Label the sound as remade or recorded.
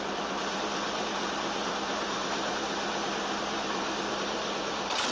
remade